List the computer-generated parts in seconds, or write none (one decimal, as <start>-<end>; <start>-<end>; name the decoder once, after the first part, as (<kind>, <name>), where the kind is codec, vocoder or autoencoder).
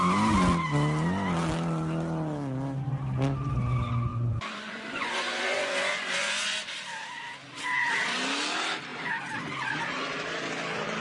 4.1-6.6 (vocoder, Vocos)